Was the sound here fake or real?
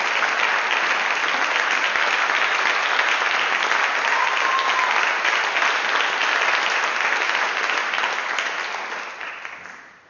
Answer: real